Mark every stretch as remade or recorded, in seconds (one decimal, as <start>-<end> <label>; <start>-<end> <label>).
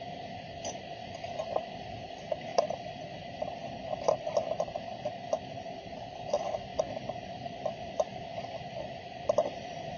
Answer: 0.0-2.5 remade; 2.5-3.2 recorded; 3.2-3.6 remade; 3.6-5.9 recorded; 5.9-6.7 remade; 6.7-7.3 recorded; 7.3-8.3 remade; 8.3-8.8 recorded; 8.8-10.0 remade